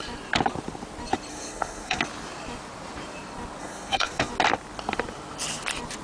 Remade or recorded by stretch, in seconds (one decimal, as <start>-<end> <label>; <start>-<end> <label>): 0.0-1.3 recorded; 1.3-2.0 remade; 2.0-3.6 recorded; 3.6-4.3 remade; 4.3-6.0 recorded